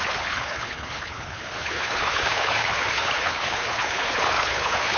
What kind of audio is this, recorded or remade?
remade